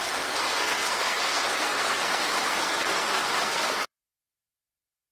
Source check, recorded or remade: remade